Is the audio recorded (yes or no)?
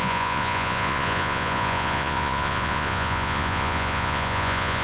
no